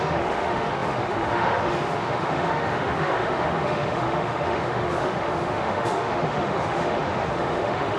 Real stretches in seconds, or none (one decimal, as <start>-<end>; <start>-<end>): none